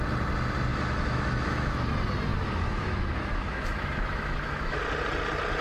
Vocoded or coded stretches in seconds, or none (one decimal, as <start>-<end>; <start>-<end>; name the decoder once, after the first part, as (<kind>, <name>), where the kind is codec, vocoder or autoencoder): 0.7-1.9 (autoencoder, DAC-VAE); 2.3-4.8